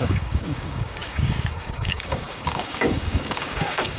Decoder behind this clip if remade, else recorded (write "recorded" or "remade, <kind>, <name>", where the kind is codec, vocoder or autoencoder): remade, codec, DAC